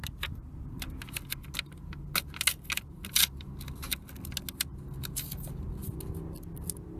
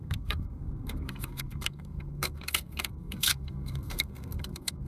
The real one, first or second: first